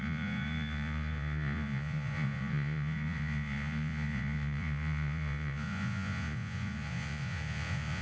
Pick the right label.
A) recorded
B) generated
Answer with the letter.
B